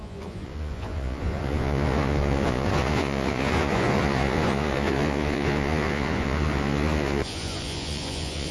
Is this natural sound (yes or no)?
no